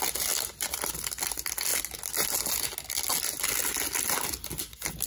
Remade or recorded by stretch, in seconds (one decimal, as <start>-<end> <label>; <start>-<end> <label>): 0.0-5.1 recorded